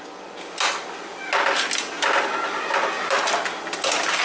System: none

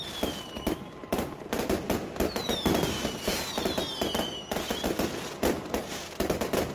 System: none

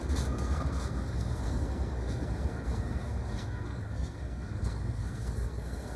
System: codec, SNAC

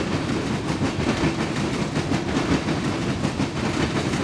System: none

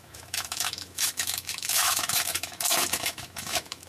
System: autoencoder, DAC-VAE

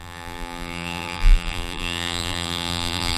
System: vocoder, BigVGAN v2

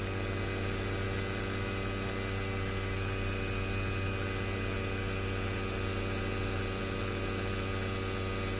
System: none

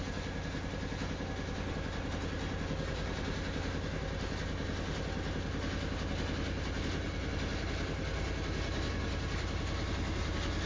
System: none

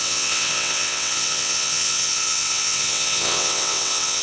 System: vocoder, WaveNeXt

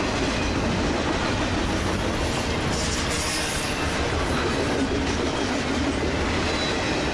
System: none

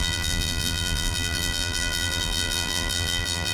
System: vocoder, BigVGAN v2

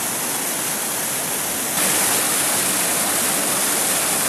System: none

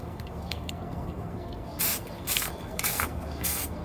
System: codec, SNAC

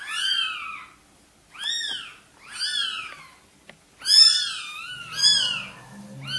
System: none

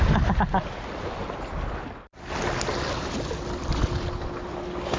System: none